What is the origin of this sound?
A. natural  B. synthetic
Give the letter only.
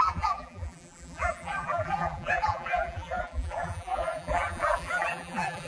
B